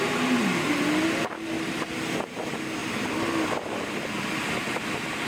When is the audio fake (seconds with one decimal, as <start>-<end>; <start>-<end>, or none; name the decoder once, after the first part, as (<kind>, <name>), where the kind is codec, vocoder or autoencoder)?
none